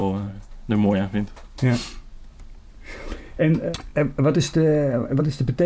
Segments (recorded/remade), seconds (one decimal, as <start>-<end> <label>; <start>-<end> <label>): 0.0-5.7 recorded